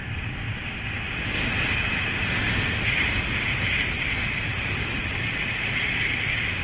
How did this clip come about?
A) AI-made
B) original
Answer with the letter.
B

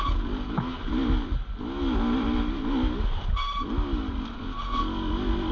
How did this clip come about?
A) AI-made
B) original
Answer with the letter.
B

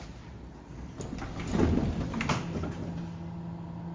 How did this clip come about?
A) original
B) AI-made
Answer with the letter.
A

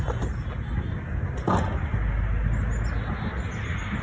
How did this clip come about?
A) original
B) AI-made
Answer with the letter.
A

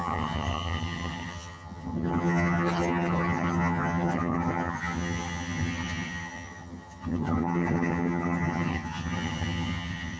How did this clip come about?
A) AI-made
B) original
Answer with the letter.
A